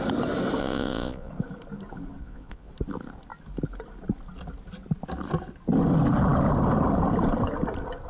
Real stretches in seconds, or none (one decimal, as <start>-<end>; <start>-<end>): 0.0-0.6; 1.3-2.2; 2.7-8.1